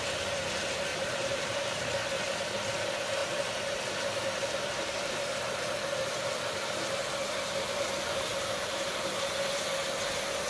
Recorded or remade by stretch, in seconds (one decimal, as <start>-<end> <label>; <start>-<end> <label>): 0.0-0.9 recorded; 0.9-1.9 remade; 1.9-3.2 recorded; 3.2-6.4 remade; 6.4-8.3 recorded; 8.3-9.3 remade; 9.3-10.5 recorded